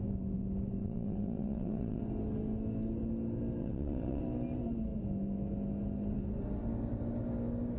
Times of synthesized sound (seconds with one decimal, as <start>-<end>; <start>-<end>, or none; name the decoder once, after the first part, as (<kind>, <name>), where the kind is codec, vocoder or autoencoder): 0.8-2.0 (vocoder, WaveNeXt); 3.6-4.2